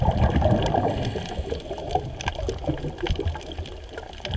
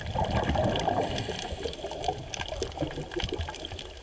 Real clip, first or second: first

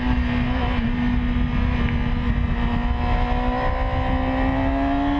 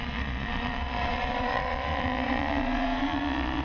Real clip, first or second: first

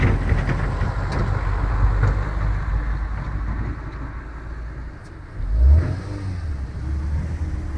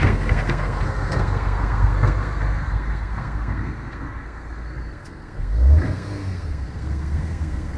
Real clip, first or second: first